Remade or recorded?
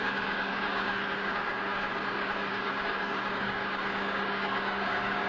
remade